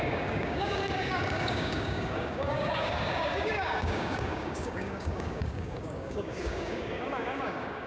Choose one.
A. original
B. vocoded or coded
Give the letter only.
B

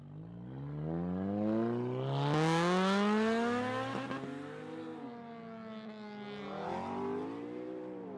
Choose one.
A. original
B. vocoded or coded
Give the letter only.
A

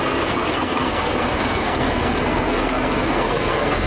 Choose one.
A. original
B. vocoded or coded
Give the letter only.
B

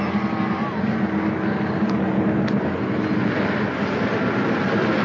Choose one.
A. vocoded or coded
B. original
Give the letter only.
B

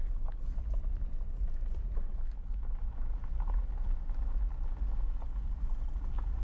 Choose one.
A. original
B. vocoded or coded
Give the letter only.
A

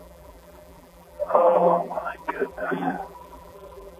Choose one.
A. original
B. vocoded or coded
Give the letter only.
B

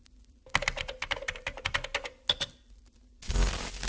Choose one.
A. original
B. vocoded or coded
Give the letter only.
A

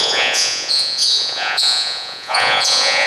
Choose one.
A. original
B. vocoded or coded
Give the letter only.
B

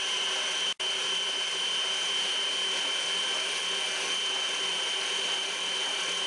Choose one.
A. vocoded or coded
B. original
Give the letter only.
B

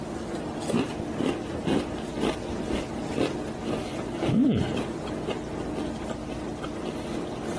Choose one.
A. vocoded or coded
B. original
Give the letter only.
B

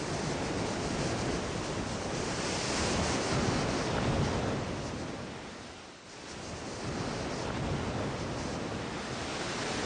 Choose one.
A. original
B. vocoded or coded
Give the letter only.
A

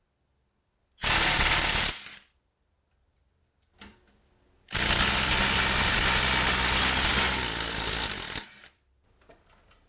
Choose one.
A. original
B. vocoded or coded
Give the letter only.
A